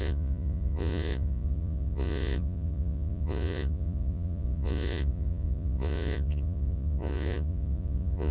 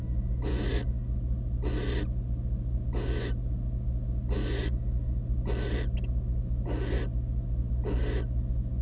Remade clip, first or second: first